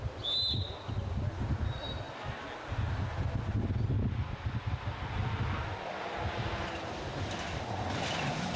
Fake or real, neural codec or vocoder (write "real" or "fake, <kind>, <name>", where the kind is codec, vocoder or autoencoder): real